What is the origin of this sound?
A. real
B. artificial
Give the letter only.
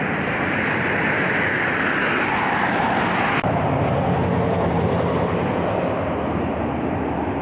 A